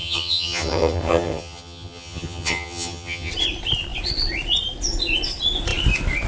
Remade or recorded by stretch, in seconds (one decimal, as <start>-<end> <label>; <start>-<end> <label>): 0.0-3.3 remade; 3.3-6.3 recorded